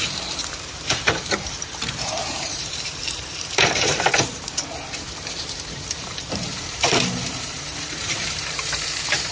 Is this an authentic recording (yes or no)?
no